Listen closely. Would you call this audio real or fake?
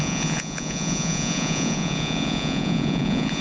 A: fake